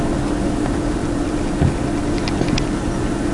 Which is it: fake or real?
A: real